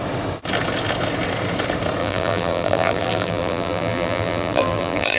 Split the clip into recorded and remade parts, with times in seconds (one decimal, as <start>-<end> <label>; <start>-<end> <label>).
0.0-2.0 recorded; 2.0-5.2 remade